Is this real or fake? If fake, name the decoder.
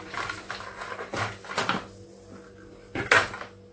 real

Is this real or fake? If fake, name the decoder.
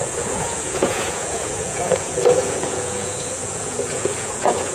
fake, vocoder, Vocos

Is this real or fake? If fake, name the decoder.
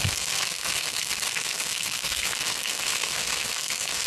fake, codec, SNAC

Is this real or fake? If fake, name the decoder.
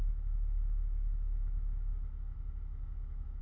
fake, autoencoder, DAC-VAE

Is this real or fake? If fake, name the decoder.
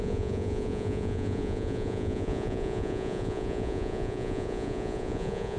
fake, vocoder, Vocos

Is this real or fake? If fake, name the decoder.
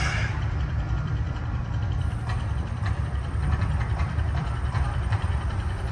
fake, vocoder, BigVGAN v2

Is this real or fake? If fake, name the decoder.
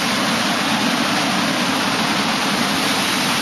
real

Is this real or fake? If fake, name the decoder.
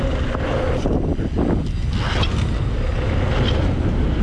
real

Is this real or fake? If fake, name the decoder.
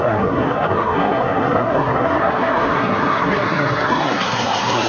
fake, codec, SNAC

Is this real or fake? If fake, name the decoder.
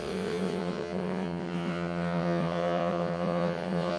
fake, vocoder, WaveNeXt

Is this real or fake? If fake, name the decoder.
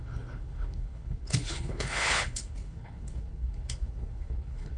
fake, codec, HILCodec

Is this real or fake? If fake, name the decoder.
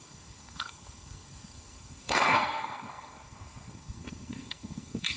fake, codec, SNAC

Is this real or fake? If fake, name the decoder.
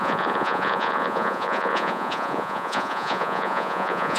fake, vocoder, Vocos